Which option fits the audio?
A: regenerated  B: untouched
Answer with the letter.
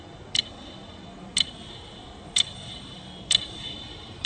B